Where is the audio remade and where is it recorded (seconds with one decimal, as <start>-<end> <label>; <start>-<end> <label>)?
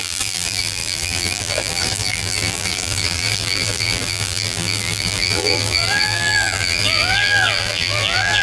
0.0-8.4 remade